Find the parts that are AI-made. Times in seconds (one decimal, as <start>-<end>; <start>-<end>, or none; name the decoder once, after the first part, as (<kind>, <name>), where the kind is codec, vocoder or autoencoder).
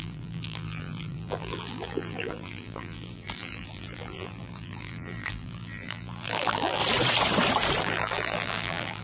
0.0-6.8 (vocoder, BigVGAN v2); 7.8-9.0